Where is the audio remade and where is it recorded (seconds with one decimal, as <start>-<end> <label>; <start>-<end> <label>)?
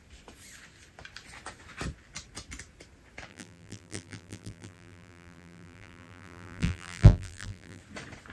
0.0-3.3 recorded; 3.3-7.8 remade; 7.8-8.3 recorded